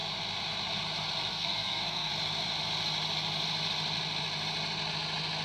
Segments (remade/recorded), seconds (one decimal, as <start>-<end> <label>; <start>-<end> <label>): 0.0-1.3 recorded; 1.3-2.1 remade; 2.1-5.4 recorded

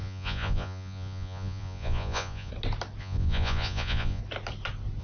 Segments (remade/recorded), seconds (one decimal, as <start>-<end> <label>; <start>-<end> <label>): 0.0-2.5 remade; 2.5-3.0 recorded; 3.0-4.2 remade; 4.2-5.0 recorded